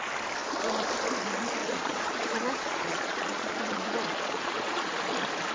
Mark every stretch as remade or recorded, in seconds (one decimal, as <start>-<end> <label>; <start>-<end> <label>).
0.0-1.6 recorded; 1.6-4.9 remade; 4.9-5.5 recorded